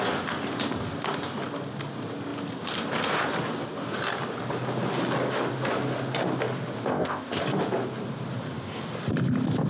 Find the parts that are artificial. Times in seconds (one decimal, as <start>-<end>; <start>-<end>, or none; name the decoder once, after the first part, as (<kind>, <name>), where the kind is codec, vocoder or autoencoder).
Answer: 6.9-7.4 (codec, ZipCodec)